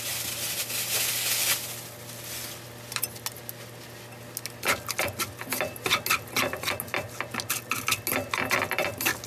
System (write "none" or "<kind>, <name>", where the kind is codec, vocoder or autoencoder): none